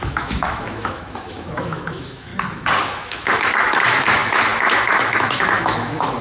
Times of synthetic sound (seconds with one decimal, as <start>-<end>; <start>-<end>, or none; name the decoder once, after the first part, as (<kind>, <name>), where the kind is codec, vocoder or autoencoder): 0.0-2.3 (autoencoder, DAC-VAE); 2.8-6.2